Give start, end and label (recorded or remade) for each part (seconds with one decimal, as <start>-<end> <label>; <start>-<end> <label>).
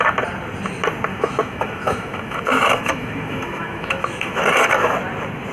0.0-1.1 recorded; 1.1-4.4 remade; 4.4-5.5 recorded